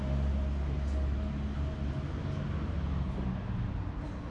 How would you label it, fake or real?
real